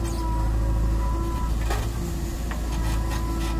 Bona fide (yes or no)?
yes